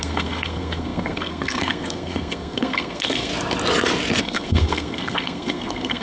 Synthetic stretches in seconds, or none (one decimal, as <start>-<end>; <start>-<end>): 0.0-3.3; 4.2-6.0